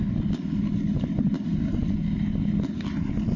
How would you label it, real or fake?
real